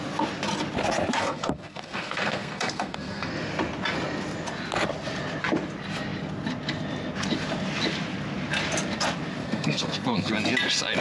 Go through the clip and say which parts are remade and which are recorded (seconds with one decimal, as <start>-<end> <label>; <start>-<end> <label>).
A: 0.0-1.2 recorded; 1.2-3.3 remade; 3.3-9.4 recorded; 9.4-10.3 remade; 10.3-11.0 recorded